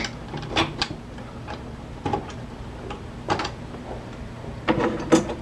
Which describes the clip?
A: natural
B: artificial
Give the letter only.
A